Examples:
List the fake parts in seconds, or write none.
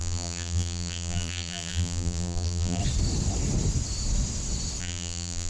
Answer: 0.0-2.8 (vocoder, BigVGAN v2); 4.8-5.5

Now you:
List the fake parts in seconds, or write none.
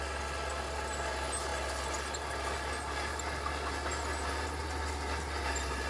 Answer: none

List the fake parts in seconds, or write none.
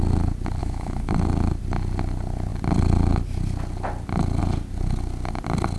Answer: 0.6-1.1 (autoencoder, DAC-VAE)